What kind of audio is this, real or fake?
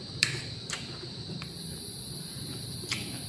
fake